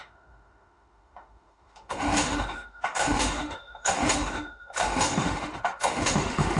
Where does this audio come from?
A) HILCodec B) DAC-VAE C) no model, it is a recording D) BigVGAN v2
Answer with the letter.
B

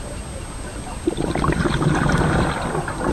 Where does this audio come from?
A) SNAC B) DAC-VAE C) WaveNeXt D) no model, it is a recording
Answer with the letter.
D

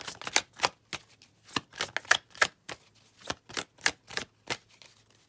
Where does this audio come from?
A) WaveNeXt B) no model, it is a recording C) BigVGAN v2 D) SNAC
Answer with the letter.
B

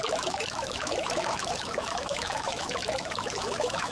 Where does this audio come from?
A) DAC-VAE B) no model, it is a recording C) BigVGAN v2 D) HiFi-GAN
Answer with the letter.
A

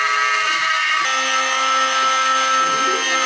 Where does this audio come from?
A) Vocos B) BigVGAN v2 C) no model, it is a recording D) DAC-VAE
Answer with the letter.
C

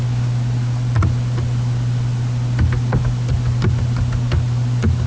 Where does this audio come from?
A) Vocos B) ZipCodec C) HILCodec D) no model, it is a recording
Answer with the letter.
D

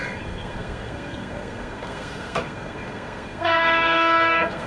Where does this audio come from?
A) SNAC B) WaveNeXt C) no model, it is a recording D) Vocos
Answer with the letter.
A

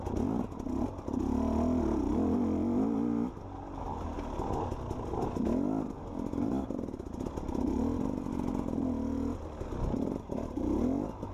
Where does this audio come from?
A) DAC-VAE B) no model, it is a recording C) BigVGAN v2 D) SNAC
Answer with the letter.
B